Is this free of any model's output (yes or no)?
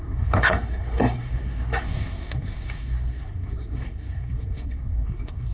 no